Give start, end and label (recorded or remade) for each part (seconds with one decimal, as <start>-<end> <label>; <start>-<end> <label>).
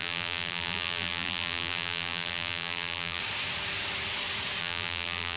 0.0-3.2 remade; 3.2-4.6 recorded; 4.6-5.4 remade